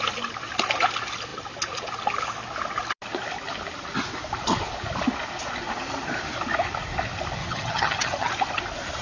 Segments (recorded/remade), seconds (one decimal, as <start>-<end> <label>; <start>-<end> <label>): 0.0-7.4 recorded; 7.4-8.3 remade; 8.3-9.0 recorded